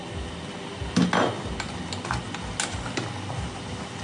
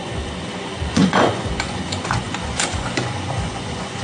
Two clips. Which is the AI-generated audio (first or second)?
second